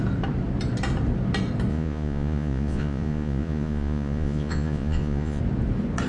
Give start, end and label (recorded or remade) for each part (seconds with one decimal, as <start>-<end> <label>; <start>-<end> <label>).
0.0-1.7 recorded; 1.7-5.4 remade; 5.4-6.1 recorded